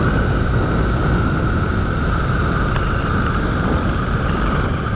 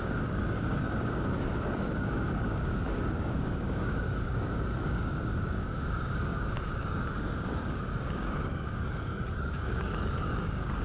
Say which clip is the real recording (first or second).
first